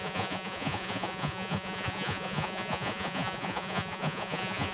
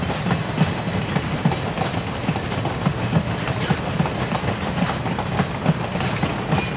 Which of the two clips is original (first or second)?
second